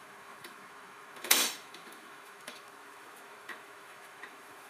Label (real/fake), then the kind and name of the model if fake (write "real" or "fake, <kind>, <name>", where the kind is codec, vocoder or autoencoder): fake, autoencoder, DAC-VAE